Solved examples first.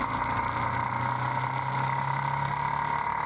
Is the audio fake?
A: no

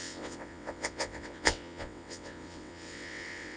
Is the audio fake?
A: yes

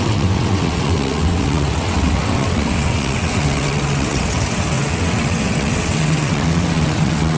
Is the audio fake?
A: yes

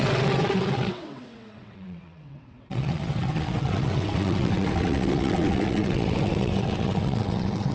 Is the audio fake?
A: yes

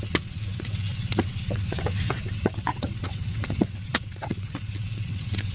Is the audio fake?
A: yes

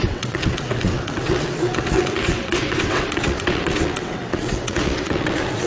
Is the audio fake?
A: yes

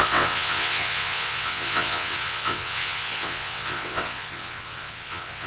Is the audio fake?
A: yes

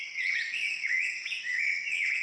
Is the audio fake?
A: yes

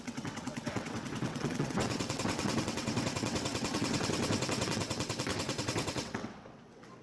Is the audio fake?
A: yes